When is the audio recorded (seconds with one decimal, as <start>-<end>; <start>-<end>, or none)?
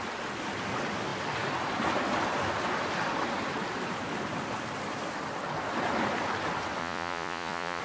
0.0-6.8